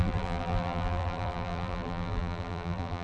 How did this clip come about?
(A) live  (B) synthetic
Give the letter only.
B